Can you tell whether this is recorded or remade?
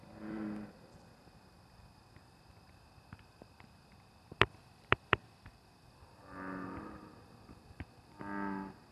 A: recorded